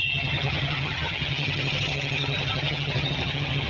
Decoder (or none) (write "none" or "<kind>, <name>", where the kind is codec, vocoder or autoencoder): vocoder, HiFi-GAN